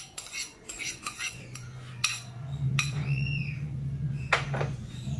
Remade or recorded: remade